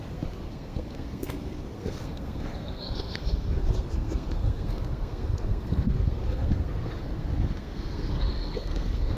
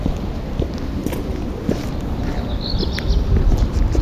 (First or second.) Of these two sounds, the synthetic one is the first